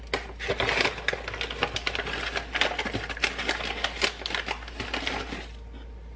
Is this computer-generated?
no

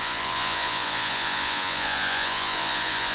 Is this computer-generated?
yes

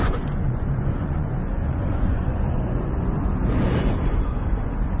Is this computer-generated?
yes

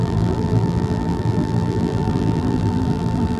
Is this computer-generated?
yes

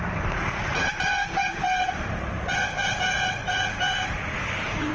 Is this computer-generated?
yes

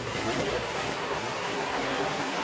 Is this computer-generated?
yes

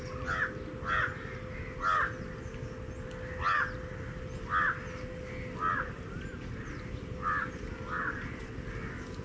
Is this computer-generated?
no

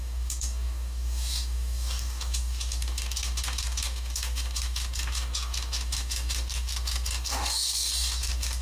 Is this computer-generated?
yes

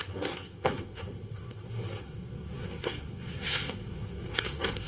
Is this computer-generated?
yes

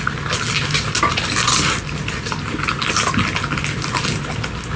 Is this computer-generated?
no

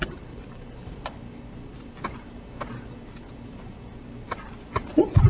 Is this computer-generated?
no